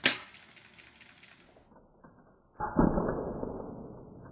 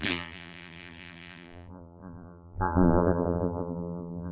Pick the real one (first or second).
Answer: first